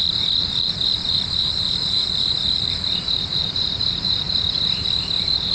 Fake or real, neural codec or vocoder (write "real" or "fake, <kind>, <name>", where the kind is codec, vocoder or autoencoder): fake, vocoder, BigVGAN v2